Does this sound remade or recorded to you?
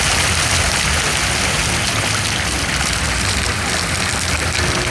recorded